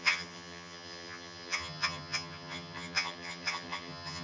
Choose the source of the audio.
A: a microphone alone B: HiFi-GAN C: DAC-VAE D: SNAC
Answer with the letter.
B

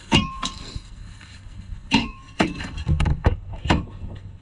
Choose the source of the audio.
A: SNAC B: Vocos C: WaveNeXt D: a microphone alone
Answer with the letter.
A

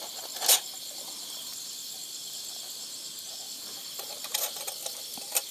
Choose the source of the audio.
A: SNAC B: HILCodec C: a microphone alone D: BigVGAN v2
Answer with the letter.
C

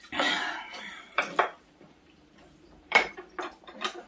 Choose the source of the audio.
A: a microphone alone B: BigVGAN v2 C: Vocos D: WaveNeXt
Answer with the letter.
B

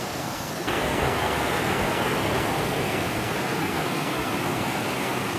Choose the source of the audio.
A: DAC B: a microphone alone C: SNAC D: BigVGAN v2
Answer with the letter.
C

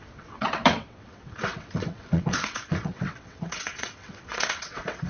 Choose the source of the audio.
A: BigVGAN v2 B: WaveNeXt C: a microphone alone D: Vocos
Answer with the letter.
B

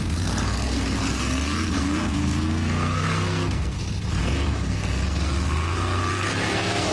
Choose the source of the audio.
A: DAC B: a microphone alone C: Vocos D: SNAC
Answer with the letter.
D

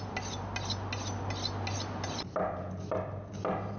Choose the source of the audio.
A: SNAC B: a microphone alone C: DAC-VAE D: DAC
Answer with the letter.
B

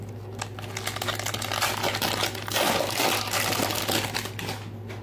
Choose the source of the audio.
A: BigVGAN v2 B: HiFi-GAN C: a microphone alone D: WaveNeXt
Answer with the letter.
C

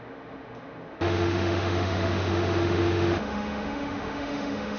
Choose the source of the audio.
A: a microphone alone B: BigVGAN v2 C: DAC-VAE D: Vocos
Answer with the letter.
C